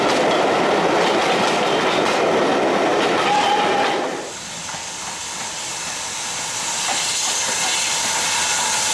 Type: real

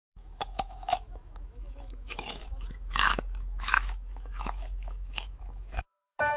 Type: fake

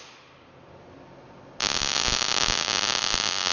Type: real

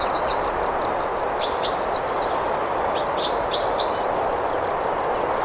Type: real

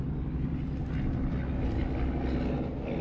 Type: real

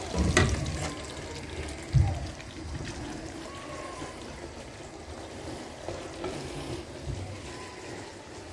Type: real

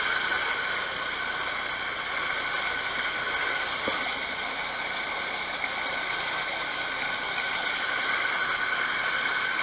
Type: real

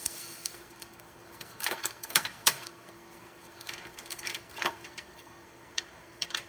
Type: fake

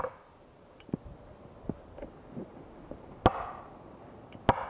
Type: real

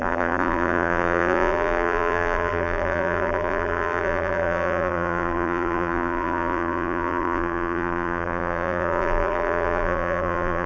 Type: fake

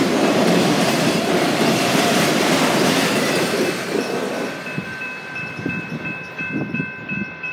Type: fake